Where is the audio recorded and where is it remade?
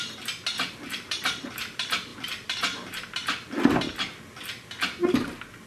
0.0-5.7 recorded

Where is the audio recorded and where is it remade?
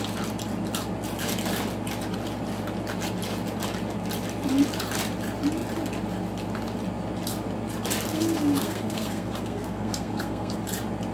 0.0-8.1 recorded; 8.1-10.6 remade; 10.6-11.1 recorded